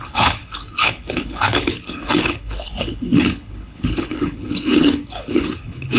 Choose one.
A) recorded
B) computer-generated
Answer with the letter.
B